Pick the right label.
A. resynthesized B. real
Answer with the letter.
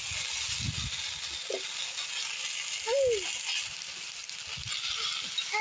B